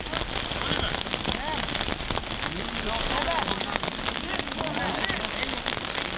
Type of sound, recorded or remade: recorded